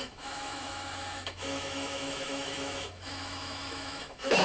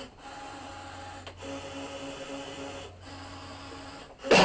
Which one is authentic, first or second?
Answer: second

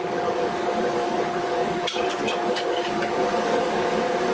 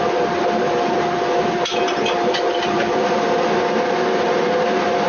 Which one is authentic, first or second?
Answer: second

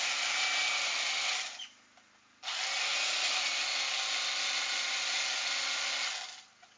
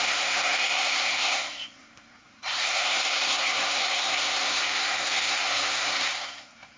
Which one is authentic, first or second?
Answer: first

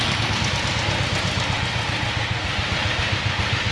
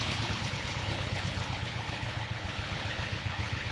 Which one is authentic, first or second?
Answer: first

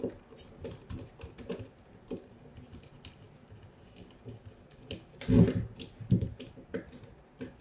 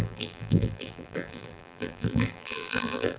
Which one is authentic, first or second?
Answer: first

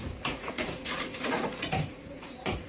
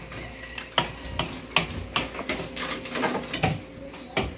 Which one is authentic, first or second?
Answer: second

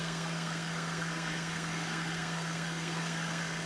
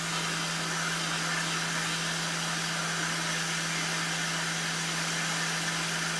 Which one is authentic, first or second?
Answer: second